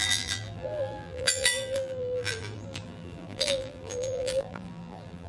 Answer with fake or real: fake